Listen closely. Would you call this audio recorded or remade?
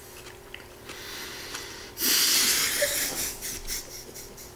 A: recorded